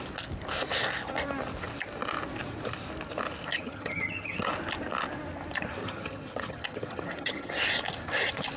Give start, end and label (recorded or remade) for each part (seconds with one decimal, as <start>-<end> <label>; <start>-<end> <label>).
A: 0.0-3.5 recorded; 3.5-4.5 remade; 4.5-5.8 recorded; 5.8-7.6 remade; 7.6-8.6 recorded

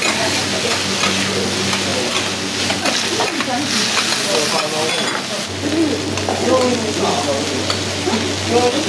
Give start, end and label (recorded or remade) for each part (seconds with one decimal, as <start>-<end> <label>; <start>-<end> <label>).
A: 0.0-8.9 recorded